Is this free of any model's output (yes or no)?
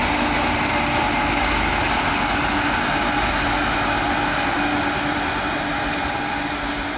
yes